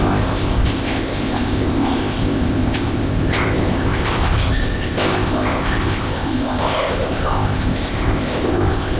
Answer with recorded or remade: remade